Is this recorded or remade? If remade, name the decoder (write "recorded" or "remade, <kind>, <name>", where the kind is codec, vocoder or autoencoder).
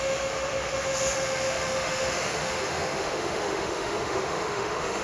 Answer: remade, autoencoder, DAC-VAE